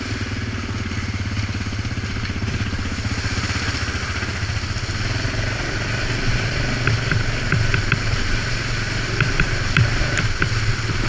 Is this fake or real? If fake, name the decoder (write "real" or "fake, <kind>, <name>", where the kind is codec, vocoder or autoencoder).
real